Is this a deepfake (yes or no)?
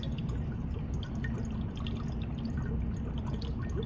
no